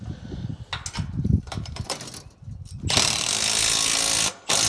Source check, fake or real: real